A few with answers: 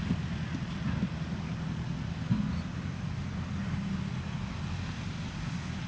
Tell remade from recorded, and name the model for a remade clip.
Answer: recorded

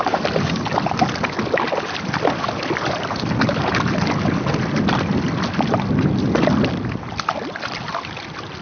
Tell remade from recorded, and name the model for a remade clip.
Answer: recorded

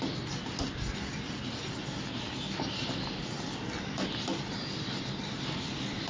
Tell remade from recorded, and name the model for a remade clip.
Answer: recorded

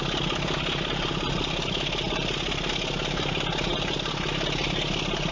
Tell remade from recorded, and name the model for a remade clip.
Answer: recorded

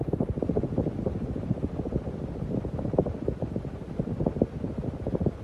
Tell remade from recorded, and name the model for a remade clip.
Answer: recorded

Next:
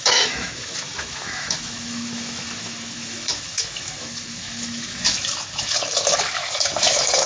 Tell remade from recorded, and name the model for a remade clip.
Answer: remade, autoencoder, DAC-VAE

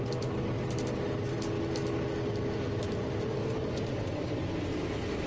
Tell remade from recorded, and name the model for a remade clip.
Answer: recorded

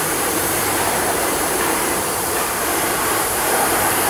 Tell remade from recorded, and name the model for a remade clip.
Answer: remade, vocoder, BigVGAN v2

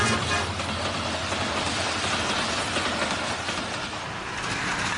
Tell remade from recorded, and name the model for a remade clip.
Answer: recorded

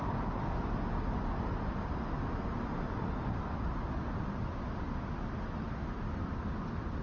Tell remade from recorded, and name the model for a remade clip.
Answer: recorded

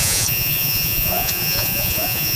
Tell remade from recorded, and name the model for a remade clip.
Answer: remade, vocoder, Vocos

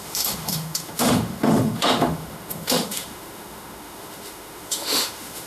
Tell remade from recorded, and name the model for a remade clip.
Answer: remade, autoencoder, DAC-VAE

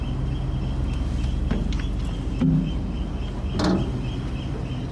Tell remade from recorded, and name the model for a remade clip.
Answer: recorded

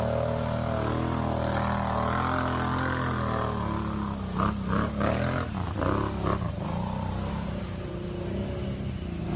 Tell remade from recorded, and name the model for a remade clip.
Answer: recorded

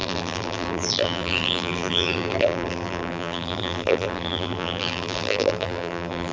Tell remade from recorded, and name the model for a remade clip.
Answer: remade, vocoder, BigVGAN v2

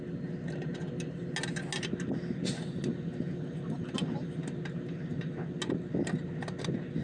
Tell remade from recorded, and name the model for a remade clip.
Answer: recorded